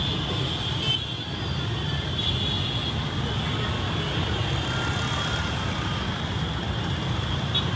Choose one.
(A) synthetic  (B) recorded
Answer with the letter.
B